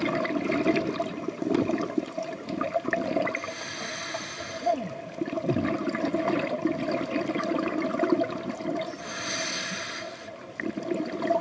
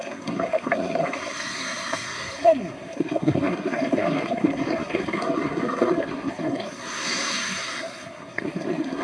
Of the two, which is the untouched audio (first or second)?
first